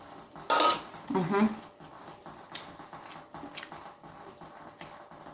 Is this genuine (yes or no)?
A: yes